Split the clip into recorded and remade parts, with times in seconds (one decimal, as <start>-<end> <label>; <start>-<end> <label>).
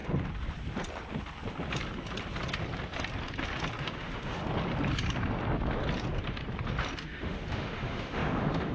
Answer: 0.0-3.8 recorded; 3.8-4.4 remade; 4.4-7.0 recorded; 7.0-8.7 remade